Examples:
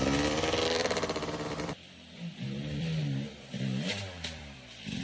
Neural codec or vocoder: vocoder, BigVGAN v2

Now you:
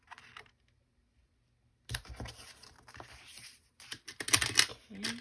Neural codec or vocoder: none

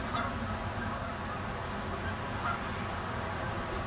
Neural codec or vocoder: none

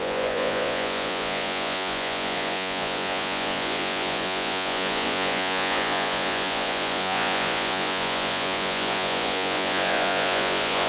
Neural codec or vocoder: vocoder, Vocos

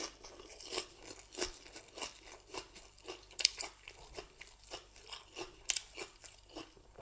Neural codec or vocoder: none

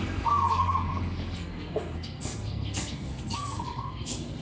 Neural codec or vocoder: codec, SNAC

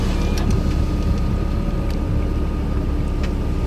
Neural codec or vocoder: none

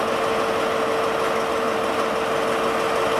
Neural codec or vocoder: none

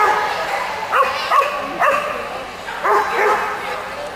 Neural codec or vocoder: none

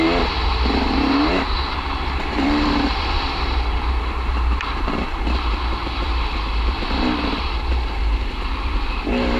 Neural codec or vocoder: vocoder, BigVGAN v2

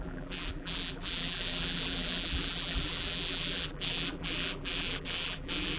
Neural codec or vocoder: vocoder, BigVGAN v2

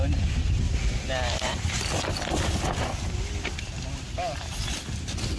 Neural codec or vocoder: none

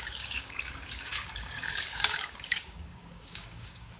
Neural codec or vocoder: codec, DAC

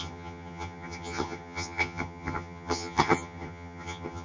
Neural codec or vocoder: vocoder, HiFi-GAN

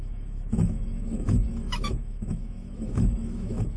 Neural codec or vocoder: autoencoder, DAC-VAE